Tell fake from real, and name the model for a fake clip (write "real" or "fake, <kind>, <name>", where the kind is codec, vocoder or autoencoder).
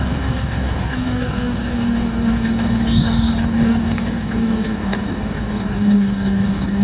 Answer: fake, codec, DAC